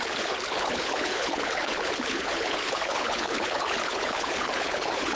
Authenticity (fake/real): fake